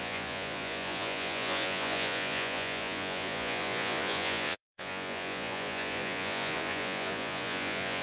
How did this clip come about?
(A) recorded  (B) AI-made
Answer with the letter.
B